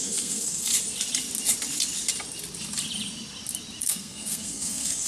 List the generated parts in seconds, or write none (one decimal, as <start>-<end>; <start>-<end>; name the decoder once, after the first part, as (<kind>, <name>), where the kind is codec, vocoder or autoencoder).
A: 0.0-0.7 (codec, SNAC); 3.8-5.1